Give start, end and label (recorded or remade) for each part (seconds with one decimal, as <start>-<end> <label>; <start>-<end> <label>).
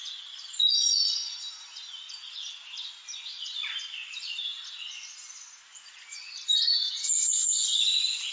0.0-0.6 recorded; 0.6-1.4 remade; 1.4-8.3 recorded